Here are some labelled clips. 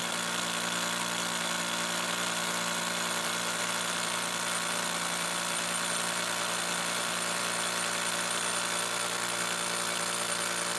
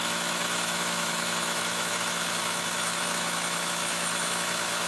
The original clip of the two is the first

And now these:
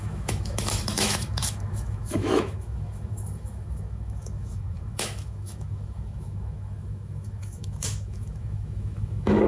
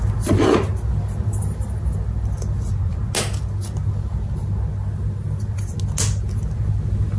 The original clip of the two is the second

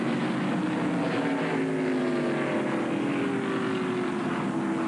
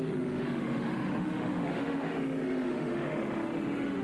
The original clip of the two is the first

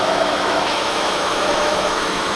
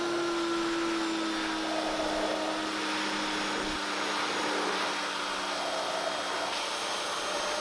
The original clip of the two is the second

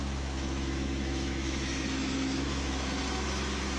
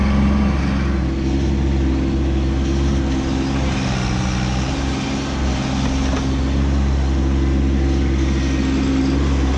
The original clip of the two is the second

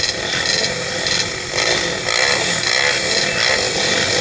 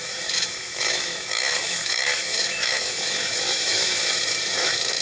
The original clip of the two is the first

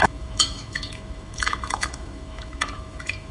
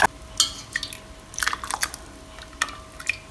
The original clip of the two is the second